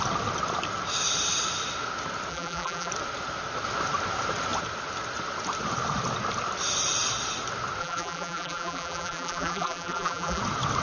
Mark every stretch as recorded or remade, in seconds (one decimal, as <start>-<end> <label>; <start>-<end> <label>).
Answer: 0.0-2.3 recorded; 2.3-2.9 remade; 2.9-7.8 recorded; 7.8-10.4 remade; 10.4-10.8 recorded